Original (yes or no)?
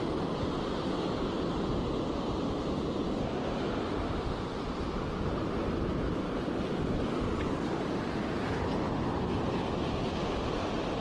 yes